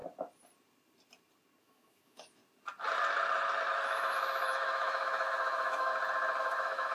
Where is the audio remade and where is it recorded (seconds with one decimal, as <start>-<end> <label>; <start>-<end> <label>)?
0.0-1.6 recorded; 1.6-2.4 remade; 2.4-3.7 recorded; 3.7-5.9 remade; 5.9-6.4 recorded; 6.4-6.9 remade

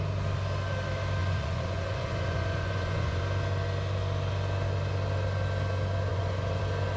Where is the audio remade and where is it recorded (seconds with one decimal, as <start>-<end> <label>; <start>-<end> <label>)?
0.0-1.2 recorded; 1.2-3.2 remade; 3.2-6.1 recorded; 6.1-6.6 remade; 6.6-7.0 recorded

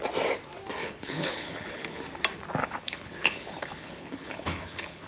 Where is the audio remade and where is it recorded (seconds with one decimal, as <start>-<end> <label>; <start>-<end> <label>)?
0.0-0.8 recorded; 0.8-2.0 remade; 2.0-2.6 recorded; 2.6-5.1 remade

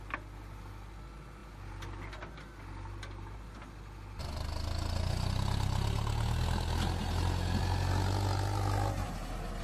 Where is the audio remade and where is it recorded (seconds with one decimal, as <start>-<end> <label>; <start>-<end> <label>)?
0.0-9.6 recorded

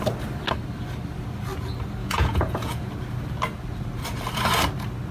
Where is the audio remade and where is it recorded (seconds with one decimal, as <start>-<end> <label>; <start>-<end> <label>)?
0.0-2.0 recorded; 2.0-2.9 remade; 2.9-5.1 recorded

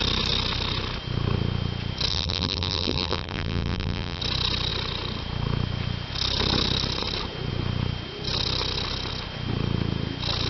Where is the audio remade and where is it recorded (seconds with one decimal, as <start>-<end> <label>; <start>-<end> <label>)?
0.0-2.1 recorded; 2.1-4.2 remade; 4.2-10.5 recorded